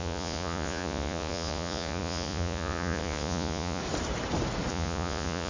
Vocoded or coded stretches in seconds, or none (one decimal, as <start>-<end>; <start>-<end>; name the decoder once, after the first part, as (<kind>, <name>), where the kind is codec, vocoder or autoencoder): 0.0-3.8 (vocoder, Vocos); 4.7-5.5